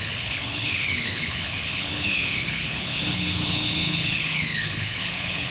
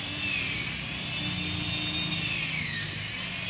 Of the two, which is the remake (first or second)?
first